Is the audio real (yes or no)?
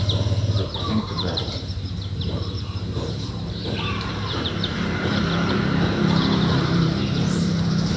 no